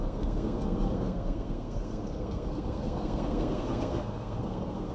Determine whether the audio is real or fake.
fake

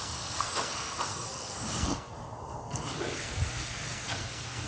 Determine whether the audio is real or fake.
fake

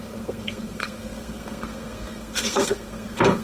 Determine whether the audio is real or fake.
fake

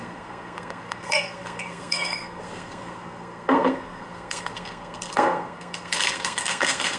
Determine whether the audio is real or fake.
fake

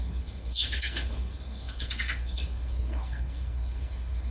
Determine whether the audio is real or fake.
fake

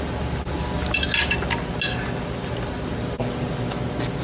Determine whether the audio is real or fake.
real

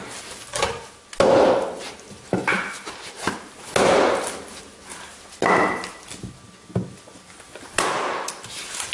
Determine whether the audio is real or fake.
real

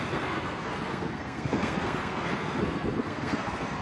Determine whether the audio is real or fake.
fake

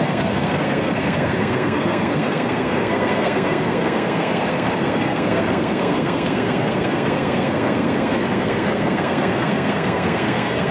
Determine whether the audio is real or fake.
fake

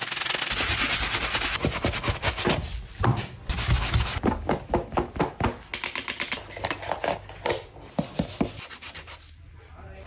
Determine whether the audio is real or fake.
real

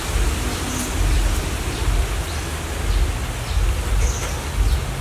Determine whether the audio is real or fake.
real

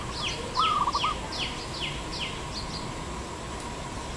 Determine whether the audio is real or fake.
real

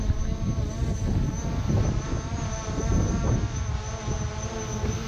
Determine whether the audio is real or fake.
real